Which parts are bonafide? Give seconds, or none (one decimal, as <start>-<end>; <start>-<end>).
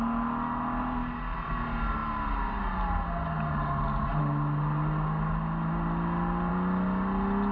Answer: 0.0-7.5